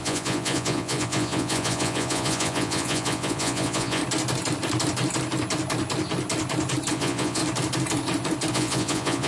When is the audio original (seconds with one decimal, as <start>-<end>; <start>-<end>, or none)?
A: 4.0-6.9; 7.4-8.5